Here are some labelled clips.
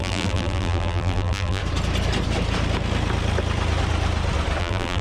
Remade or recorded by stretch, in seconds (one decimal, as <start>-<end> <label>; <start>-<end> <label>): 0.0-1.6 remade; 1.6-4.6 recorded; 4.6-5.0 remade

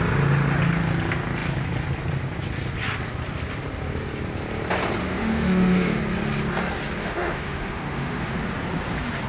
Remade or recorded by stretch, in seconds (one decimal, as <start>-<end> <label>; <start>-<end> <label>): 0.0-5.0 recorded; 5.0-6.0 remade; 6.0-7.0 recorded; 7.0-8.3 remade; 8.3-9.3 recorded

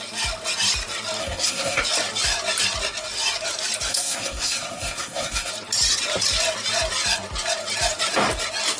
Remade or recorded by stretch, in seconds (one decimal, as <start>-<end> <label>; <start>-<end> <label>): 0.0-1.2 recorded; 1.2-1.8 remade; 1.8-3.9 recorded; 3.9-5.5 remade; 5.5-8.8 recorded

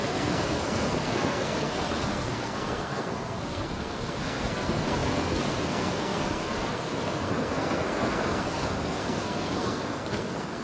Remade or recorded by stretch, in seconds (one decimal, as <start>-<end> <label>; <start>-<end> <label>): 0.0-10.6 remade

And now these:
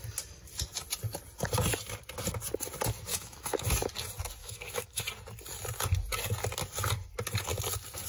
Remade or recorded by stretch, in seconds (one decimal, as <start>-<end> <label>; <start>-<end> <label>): 0.0-3.1 recorded; 3.1-3.6 remade; 3.6-4.4 recorded; 4.4-5.0 remade; 5.0-8.1 recorded

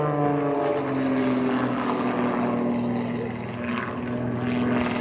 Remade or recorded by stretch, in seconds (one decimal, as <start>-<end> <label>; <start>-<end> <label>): 0.0-5.0 recorded

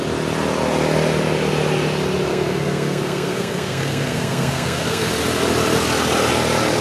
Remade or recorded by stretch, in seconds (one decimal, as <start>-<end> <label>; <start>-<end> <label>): 0.0-2.3 recorded; 2.3-5.1 remade; 5.1-6.8 recorded

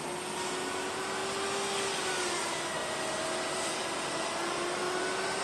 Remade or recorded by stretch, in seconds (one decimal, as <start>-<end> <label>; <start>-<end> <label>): 0.0-5.4 recorded